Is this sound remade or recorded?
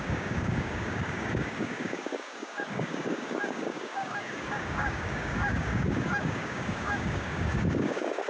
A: remade